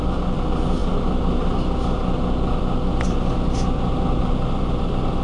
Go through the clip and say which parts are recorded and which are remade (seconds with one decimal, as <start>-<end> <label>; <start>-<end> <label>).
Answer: 0.0-5.2 recorded